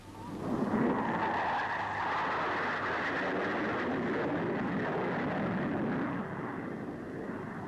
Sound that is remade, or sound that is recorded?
recorded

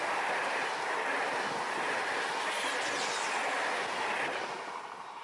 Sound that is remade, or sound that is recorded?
recorded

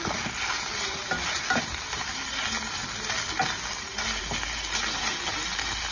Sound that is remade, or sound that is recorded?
recorded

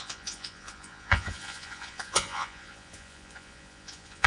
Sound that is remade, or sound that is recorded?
remade